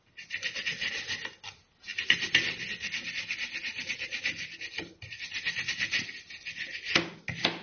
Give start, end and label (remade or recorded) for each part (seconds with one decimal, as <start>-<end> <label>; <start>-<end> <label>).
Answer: 0.0-7.6 recorded